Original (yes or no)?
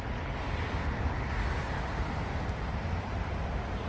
yes